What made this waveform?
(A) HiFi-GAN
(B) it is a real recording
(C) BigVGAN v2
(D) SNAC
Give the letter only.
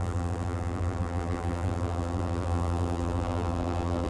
C